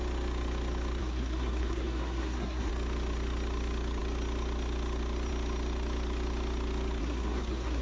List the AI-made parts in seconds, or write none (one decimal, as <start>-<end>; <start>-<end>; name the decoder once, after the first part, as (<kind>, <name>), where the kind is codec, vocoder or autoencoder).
1.0-2.7 (codec, SNAC); 7.0-7.8

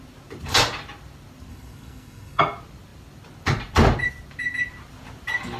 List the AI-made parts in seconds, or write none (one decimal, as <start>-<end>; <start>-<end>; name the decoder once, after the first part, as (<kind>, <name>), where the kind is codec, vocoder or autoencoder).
1.5-2.4 (codec, SNAC)

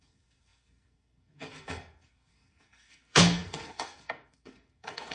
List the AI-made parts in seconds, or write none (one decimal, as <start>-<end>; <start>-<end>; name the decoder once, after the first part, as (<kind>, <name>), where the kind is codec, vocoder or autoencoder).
0.0-5.1 (codec, SNAC)

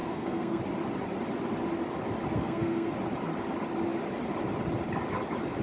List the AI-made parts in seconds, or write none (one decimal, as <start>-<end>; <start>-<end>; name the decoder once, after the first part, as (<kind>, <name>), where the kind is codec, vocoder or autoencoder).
0.0-0.6 (codec, SNAC); 2.3-2.9

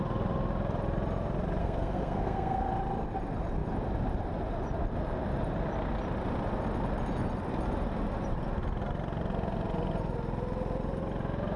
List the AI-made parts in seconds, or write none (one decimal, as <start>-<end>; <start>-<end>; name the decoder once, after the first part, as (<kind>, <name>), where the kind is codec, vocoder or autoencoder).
1.6-2.7 (codec, SNAC)

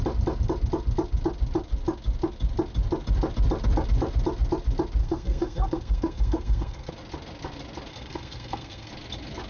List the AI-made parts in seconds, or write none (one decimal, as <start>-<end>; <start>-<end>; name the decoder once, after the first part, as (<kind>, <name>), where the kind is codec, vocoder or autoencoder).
5.0-6.9 (codec, SNAC); 7.9-8.9

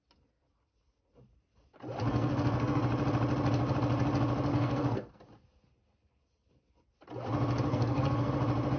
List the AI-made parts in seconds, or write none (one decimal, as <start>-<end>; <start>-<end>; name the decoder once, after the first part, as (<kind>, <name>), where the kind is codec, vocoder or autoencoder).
2.1-2.8 (codec, SNAC); 4.5-5.2; 7.7-8.3